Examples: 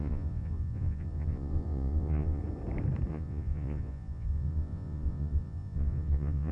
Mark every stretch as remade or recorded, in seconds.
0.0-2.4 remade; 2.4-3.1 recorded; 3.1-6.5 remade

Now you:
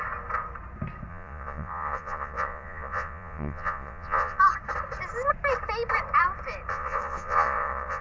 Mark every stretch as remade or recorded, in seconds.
0.0-1.1 recorded; 1.1-4.4 remade; 4.4-6.7 recorded; 6.7-8.0 remade

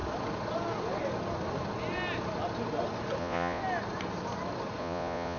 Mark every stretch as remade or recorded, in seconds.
0.0-3.2 recorded; 3.2-3.6 remade; 3.6-4.8 recorded; 4.8-5.4 remade

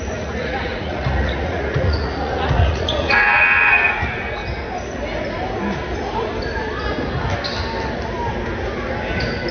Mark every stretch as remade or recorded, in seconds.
0.0-4.4 remade; 4.4-9.5 recorded

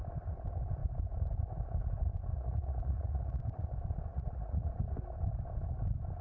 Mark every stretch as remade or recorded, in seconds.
0.0-2.3 recorded; 2.3-3.4 remade; 3.4-4.1 recorded; 4.1-4.7 remade; 4.7-6.2 recorded

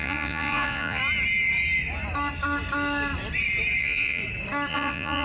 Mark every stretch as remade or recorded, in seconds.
0.0-1.0 remade; 1.0-3.8 recorded; 3.8-4.2 remade; 4.2-4.7 recorded; 4.7-5.2 remade

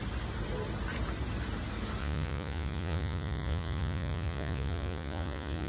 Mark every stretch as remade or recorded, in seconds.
0.0-2.0 recorded; 2.0-5.7 remade

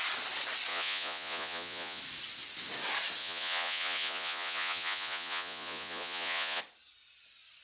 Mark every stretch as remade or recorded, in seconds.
0.0-0.7 recorded; 0.7-2.0 remade; 2.0-3.2 recorded; 3.2-6.6 remade; 6.6-7.6 recorded